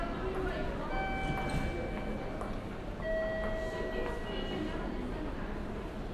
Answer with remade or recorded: recorded